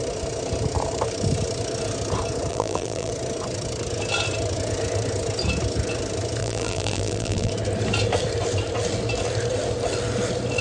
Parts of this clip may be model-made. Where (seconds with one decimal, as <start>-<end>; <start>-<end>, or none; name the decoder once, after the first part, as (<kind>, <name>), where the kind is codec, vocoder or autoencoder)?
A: 2.5-3.1 (vocoder, BigVGAN v2); 6.4-7.5